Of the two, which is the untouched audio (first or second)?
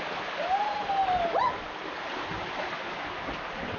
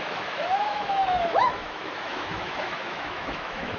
first